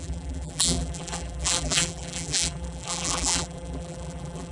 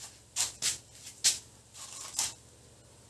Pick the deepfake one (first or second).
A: first